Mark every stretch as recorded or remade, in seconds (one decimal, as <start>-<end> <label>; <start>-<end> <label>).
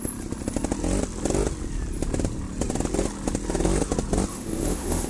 0.0-4.3 recorded; 4.3-5.1 remade